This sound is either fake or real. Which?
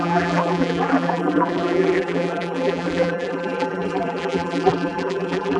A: fake